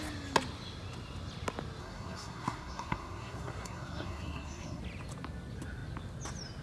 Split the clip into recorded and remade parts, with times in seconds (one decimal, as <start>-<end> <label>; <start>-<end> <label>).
0.0-1.8 recorded; 1.8-4.8 remade; 4.8-6.6 recorded